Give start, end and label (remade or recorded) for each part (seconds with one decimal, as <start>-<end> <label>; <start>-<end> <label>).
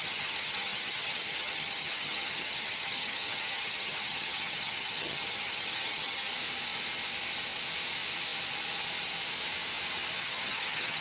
0.0-6.3 remade; 6.3-10.2 recorded; 10.2-11.0 remade